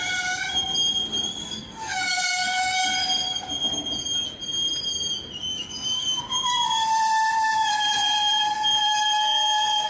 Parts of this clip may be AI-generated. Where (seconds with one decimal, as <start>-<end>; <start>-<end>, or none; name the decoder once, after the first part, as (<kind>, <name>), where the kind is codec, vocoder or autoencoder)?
1.4-2.8 (codec, DAC); 5.5-6.2